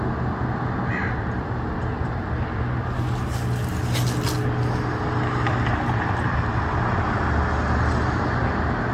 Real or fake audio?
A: real